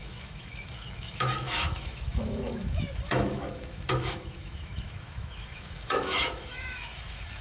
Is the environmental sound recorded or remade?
remade